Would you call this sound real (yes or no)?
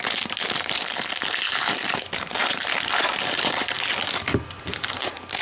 no